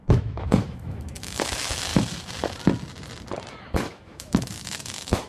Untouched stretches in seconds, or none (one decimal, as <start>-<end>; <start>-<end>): 1.9-3.5